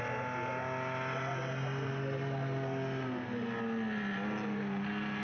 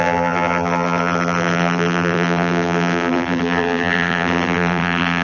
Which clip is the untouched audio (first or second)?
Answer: first